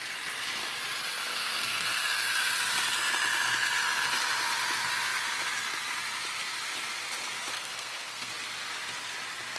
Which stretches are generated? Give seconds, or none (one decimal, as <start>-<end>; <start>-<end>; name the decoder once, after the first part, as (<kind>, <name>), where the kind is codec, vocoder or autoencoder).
1.3-2.0 (codec, SNAC); 7.5-8.3